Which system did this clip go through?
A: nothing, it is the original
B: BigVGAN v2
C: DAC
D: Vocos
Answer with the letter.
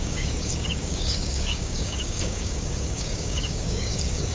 C